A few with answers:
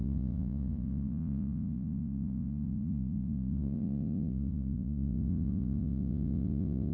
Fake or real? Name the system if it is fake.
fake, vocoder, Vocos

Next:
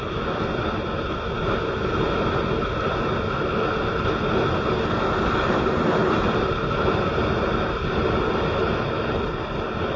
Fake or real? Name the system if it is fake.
real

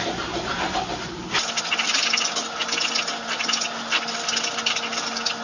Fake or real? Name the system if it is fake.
real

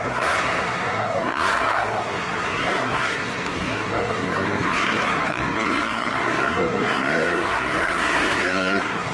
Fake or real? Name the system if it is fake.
fake, codec, SNAC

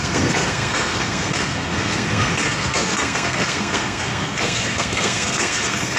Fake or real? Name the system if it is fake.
fake, codec, SNAC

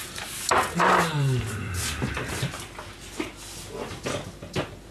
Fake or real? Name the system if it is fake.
real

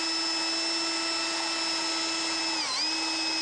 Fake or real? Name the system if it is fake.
real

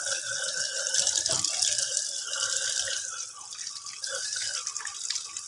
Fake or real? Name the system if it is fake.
real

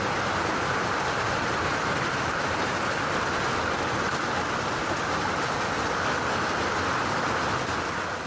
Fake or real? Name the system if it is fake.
real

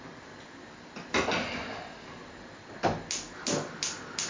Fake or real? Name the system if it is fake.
real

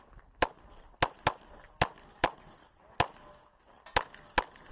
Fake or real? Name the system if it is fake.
real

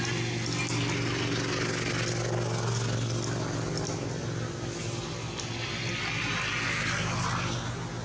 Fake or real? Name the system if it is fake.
real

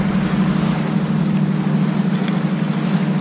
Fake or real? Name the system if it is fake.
real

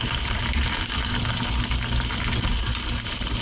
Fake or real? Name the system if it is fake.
real